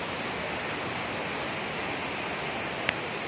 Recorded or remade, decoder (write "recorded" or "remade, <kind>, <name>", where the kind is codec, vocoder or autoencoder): recorded